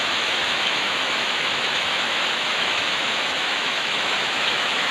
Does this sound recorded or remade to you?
remade